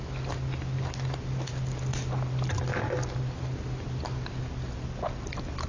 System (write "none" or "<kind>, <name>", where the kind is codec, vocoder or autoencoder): none